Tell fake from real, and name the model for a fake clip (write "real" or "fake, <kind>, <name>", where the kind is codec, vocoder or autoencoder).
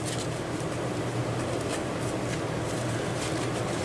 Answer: real